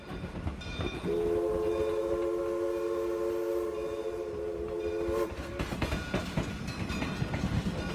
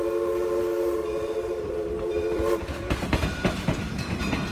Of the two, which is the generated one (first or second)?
second